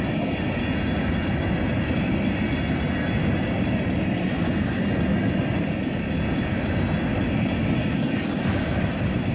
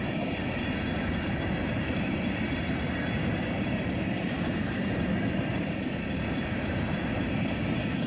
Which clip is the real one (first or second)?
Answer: first